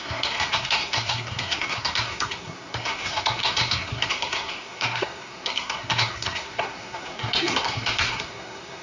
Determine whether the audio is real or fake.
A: fake